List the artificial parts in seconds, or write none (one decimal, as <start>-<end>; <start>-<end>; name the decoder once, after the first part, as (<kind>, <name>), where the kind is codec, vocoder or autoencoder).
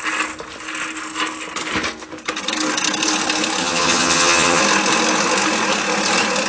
3.6-4.6 (vocoder, HiFi-GAN)